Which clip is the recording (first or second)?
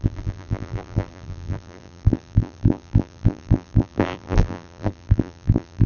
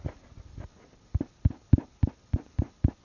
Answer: second